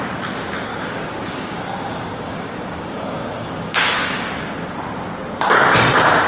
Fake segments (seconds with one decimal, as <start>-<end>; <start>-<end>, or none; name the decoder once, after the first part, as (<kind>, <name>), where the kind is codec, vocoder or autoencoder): 0.7-4.5 (codec, DAC)